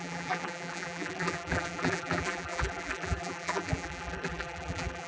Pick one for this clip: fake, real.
fake